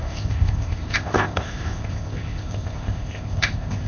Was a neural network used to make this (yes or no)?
yes